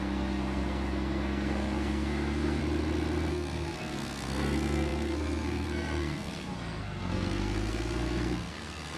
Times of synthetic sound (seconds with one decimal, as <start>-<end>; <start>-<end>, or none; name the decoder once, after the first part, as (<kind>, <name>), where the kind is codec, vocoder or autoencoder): 0.0-2.6 (codec, SNAC); 3.3-9.0